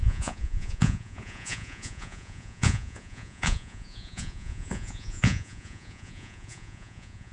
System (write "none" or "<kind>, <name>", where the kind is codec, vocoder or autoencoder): vocoder, Vocos